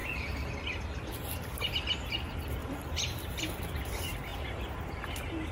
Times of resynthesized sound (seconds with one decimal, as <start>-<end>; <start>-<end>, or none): 0.0-0.5; 2.6-3.4